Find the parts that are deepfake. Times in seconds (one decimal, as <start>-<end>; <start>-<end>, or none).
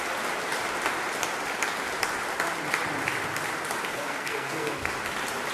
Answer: 3.9-4.9